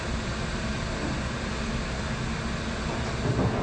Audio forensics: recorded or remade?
recorded